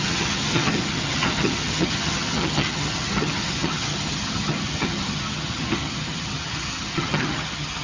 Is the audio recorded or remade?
remade